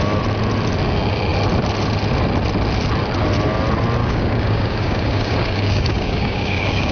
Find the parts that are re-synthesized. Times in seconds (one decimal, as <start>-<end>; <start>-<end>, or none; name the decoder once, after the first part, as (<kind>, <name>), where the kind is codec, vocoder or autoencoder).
4.0-6.9 (codec, DAC)